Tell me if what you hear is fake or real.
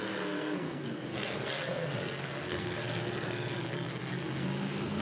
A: fake